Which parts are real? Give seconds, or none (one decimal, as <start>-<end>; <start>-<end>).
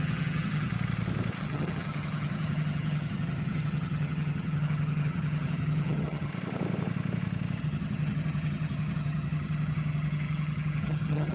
0.7-1.4; 6.3-7.6